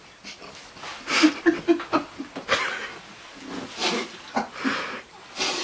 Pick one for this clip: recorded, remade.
recorded